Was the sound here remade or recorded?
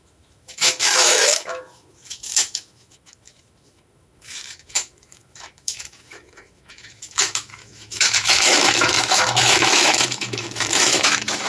remade